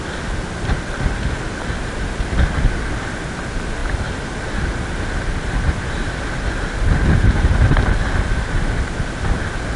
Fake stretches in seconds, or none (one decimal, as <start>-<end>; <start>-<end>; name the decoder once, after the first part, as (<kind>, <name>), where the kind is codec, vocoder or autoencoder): none